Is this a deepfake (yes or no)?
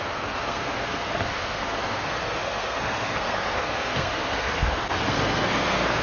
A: yes